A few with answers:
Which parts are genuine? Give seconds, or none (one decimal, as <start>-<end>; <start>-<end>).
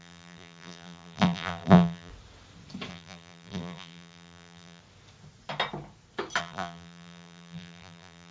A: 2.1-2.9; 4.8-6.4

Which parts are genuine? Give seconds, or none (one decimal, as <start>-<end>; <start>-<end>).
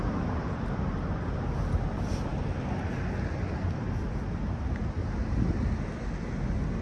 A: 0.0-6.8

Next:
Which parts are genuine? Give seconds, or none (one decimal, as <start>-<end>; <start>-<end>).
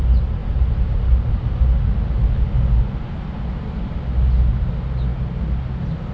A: 0.0-6.1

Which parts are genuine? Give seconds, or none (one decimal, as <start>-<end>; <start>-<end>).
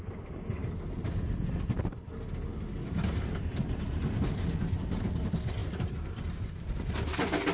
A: 0.0-0.6; 2.1-2.5; 5.1-5.6; 6.9-7.5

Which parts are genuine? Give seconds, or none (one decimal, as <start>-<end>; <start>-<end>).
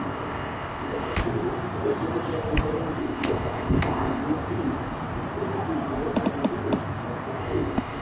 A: 1.2-3.0; 4.2-7.4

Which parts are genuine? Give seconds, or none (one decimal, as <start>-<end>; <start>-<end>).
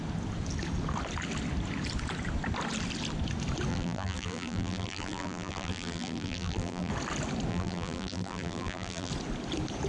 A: 0.0-3.7; 6.9-7.5; 9.1-9.9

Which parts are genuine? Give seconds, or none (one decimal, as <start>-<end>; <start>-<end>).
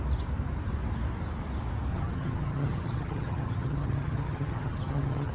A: 0.0-1.9